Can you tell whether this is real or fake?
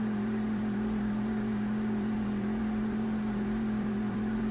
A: fake